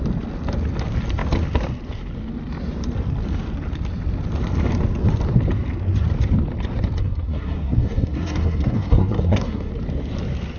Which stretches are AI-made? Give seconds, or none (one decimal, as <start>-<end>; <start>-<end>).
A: 7.0-9.7